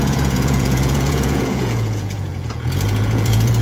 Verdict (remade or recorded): remade